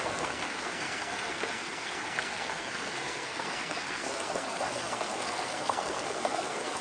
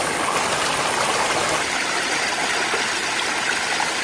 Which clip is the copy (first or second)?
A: first